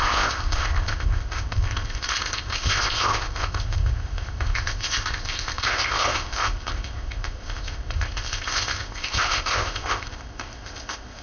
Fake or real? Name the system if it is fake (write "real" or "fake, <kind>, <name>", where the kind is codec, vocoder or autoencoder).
fake, codec, ZipCodec